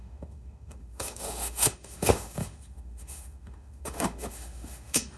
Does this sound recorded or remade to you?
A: remade